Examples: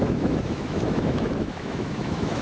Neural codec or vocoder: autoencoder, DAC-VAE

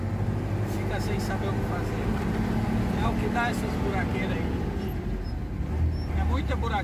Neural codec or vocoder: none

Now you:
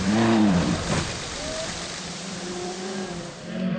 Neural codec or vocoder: vocoder, BigVGAN v2